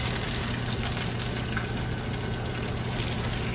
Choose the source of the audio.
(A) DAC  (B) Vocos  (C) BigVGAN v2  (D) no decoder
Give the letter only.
D